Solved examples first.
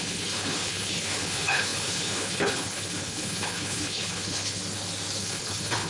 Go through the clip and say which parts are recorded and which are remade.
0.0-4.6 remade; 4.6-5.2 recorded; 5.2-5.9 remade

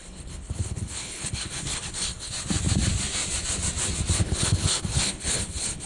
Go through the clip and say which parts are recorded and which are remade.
0.0-2.3 remade; 2.3-4.2 recorded; 4.2-5.9 remade